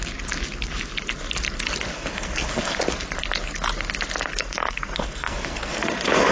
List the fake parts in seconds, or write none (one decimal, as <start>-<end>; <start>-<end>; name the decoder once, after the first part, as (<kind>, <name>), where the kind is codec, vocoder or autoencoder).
1.9-2.8 (codec, SNAC); 4.3-6.3